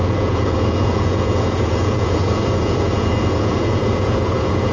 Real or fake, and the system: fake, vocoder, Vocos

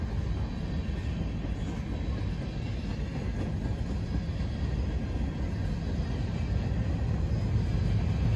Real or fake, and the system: real